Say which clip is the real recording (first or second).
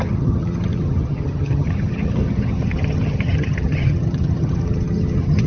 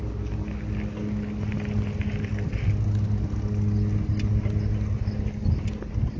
second